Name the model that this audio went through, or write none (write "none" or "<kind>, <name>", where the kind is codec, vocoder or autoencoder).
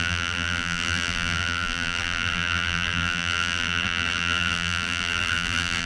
vocoder, BigVGAN v2